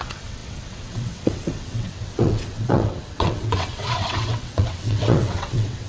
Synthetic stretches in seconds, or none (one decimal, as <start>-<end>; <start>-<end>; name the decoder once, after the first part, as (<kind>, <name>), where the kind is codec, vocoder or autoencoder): 0.0-5.9 (vocoder, WaveNeXt)